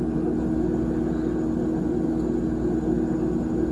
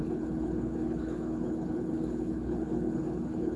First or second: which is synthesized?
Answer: second